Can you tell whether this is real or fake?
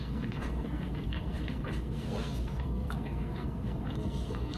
fake